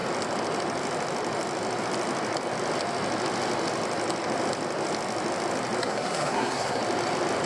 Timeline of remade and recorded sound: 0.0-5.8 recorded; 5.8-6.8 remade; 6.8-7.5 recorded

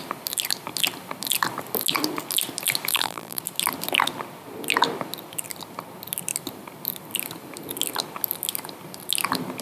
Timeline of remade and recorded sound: 0.0-2.9 recorded; 2.9-3.4 remade; 3.4-9.6 recorded

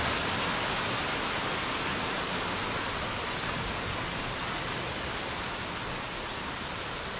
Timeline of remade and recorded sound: 0.0-7.2 recorded

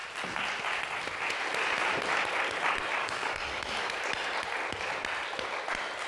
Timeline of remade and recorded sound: 0.0-3.0 recorded; 3.0-3.9 remade; 3.9-6.1 recorded

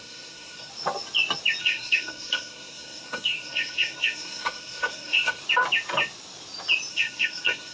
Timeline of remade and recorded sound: 0.0-0.7 remade; 0.7-1.6 recorded; 1.6-5.4 remade; 5.4-6.9 recorded; 6.9-7.7 remade